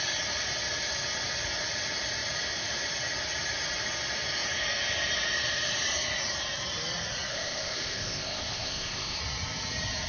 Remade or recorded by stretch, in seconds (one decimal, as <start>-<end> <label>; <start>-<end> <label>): 0.0-7.3 recorded; 7.3-9.2 remade; 9.2-10.1 recorded